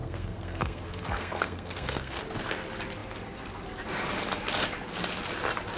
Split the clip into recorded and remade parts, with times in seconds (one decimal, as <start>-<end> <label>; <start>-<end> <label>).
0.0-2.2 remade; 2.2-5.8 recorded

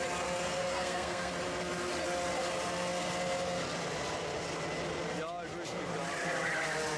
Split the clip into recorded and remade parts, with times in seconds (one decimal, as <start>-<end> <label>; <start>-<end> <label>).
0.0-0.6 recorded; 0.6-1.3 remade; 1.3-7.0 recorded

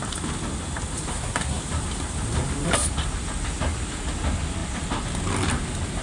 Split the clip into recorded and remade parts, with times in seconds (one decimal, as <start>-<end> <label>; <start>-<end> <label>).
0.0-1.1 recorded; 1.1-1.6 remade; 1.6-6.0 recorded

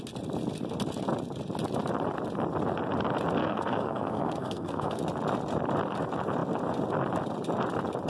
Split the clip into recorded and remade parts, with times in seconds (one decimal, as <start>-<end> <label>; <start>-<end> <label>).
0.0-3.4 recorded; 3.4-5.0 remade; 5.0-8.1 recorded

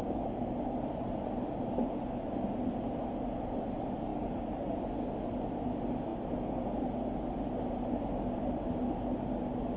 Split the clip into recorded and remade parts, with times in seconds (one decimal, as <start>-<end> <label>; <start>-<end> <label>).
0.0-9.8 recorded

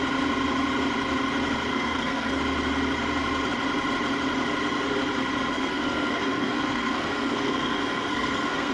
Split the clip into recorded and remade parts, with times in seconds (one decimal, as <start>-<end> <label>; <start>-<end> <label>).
0.0-1.7 recorded; 1.7-2.4 remade; 2.4-5.5 recorded; 5.5-8.7 remade

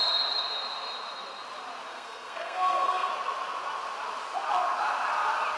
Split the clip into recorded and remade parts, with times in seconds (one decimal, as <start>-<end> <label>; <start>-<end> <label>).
0.0-1.9 recorded; 1.9-3.1 remade; 3.1-5.6 recorded

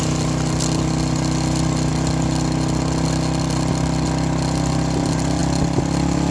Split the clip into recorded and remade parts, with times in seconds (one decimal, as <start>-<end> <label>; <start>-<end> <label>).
0.0-6.3 recorded